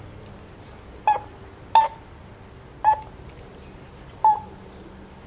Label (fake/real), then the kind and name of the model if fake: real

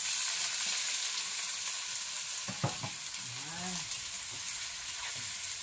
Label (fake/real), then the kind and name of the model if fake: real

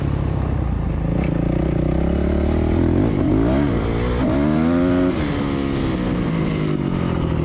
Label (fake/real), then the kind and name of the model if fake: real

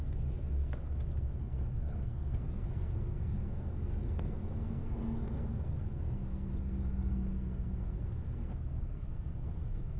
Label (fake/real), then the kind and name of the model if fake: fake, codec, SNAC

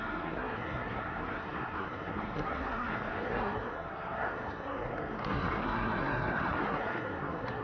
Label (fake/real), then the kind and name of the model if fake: fake, codec, SNAC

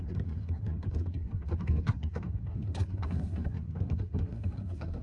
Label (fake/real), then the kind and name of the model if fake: fake, codec, SNAC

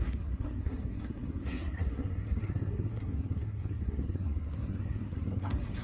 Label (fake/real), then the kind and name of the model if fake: fake, codec, SNAC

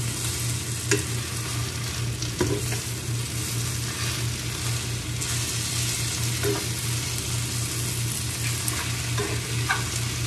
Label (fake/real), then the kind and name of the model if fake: real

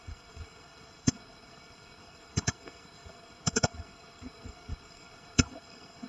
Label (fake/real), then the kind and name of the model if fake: fake, codec, SNAC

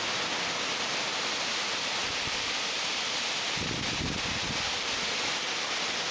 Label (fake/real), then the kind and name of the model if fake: real